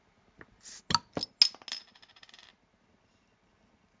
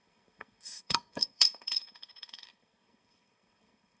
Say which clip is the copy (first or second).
second